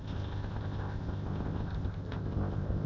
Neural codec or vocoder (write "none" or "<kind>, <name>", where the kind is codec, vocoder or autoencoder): codec, ZipCodec